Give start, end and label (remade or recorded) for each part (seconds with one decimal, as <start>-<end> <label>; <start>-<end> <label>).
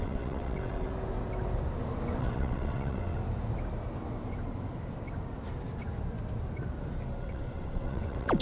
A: 0.0-0.9 remade; 0.9-2.2 recorded; 2.2-3.2 remade; 3.2-7.2 recorded; 7.2-8.4 remade